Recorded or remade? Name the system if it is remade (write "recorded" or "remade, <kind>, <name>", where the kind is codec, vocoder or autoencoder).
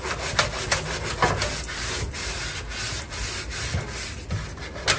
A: recorded